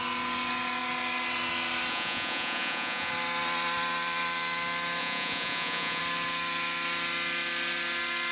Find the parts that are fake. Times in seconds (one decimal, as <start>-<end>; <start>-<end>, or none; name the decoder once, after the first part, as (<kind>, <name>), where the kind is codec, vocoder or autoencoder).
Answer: 1.9-3.1 (vocoder, Vocos); 5.0-6.0